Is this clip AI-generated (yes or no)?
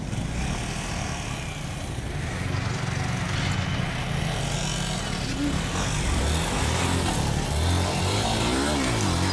no